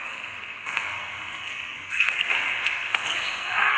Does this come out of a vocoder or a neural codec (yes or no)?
yes